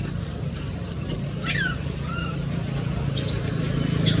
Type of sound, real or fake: real